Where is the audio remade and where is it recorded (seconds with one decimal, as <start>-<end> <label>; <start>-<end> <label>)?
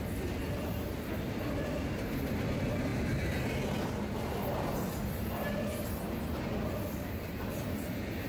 0.0-8.3 recorded